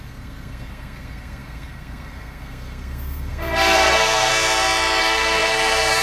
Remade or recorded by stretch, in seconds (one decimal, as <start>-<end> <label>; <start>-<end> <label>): 0.0-4.3 remade; 4.3-5.0 recorded; 5.0-6.0 remade